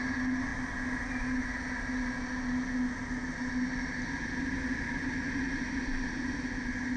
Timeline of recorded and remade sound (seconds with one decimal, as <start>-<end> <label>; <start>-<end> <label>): 0.0-7.0 recorded